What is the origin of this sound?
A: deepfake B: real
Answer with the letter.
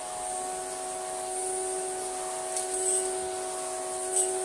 B